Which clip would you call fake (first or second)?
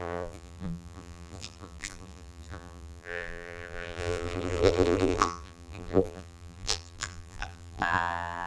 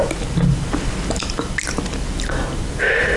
first